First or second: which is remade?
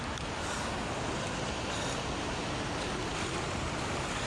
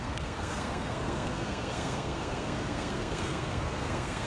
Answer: second